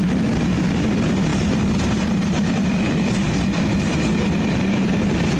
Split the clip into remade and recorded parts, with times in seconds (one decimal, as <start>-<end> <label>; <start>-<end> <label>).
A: 0.0-1.3 recorded; 1.3-4.2 remade; 4.2-5.4 recorded